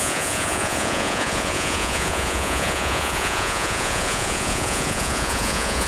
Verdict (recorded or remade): remade